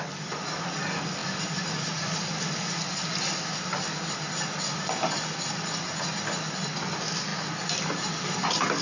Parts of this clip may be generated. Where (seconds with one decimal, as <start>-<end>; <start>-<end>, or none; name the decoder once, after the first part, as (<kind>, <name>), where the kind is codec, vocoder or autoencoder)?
none